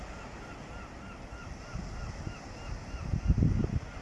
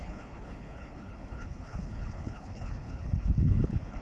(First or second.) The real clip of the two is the first